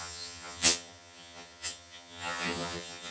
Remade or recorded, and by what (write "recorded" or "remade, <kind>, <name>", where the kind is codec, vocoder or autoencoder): remade, vocoder, HiFi-GAN